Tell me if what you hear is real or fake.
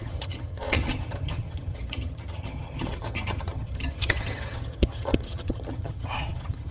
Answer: fake